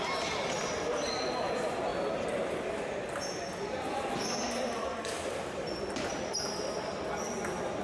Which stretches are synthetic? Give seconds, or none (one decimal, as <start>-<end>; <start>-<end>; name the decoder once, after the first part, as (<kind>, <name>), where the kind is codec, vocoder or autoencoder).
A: none